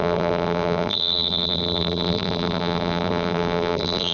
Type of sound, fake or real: fake